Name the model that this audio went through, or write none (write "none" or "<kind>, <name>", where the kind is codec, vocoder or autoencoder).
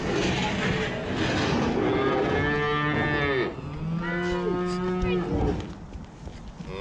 none